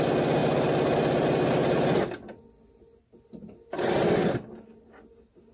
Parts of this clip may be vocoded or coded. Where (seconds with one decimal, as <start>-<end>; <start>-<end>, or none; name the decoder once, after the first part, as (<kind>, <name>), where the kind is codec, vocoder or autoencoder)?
none